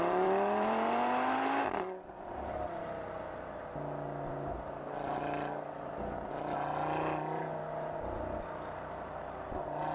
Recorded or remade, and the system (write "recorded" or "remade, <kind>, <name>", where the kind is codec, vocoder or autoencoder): remade, vocoder, BigVGAN v2